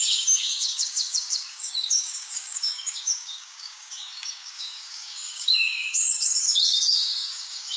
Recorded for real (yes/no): no